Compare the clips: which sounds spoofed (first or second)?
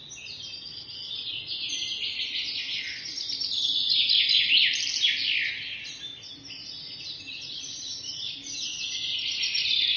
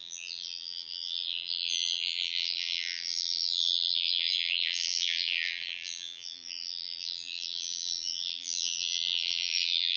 second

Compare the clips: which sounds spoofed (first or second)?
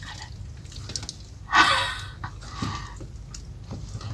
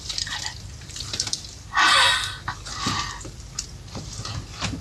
second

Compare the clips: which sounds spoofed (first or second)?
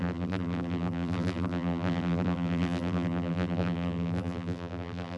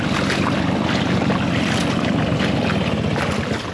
first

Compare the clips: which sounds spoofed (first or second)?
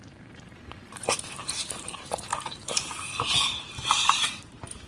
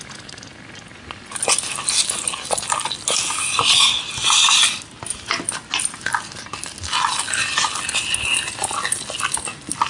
first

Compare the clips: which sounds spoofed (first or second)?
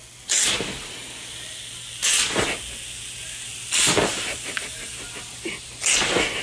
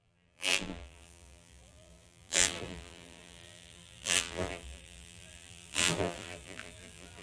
second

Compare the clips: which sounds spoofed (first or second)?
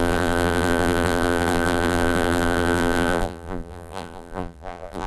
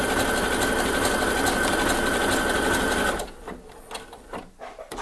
first